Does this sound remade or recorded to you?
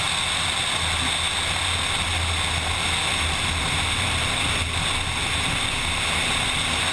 recorded